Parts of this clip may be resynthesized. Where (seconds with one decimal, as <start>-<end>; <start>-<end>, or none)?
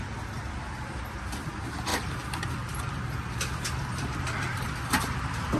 none